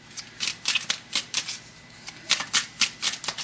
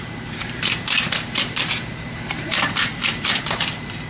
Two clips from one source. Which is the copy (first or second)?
second